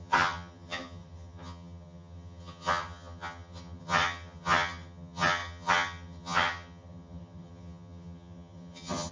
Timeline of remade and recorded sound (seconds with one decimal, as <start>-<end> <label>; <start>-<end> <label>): 0.0-9.1 remade